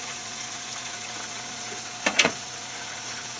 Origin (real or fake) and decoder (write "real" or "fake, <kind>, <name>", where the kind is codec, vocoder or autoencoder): fake, vocoder, Vocos